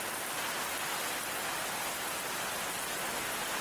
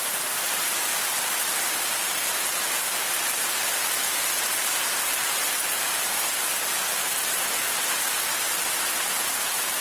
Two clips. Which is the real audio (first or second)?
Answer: first